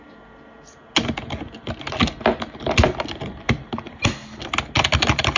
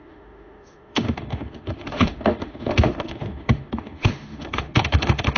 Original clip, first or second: first